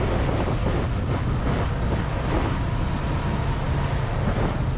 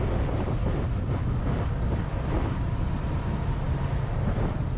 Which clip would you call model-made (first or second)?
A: second